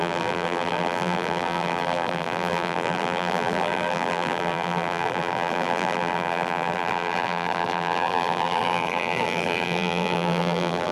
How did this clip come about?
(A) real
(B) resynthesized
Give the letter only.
B